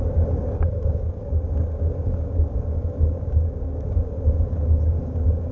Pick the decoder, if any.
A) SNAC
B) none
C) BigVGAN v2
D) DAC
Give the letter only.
D